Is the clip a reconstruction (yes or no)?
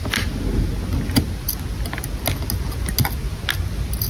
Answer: no